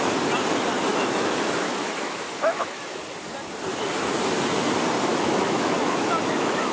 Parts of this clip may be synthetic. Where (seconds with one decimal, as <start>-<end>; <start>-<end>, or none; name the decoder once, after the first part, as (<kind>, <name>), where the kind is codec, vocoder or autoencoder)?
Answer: 0.9-3.0 (autoencoder, DAC-VAE); 5.1-6.7